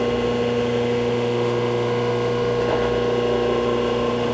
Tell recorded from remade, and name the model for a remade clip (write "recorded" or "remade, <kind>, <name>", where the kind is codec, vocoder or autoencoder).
remade, autoencoder, DAC-VAE